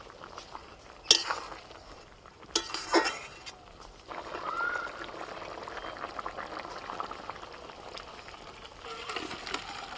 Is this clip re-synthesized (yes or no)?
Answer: no